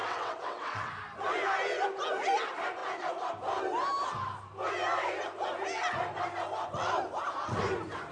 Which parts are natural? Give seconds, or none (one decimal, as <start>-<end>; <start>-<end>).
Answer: 0.9-8.1